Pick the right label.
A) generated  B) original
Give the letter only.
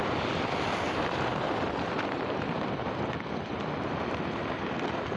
B